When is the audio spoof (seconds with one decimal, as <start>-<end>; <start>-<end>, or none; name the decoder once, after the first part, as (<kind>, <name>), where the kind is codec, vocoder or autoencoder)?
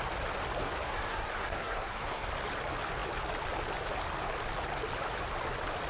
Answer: 0.6-2.3 (codec, SNAC)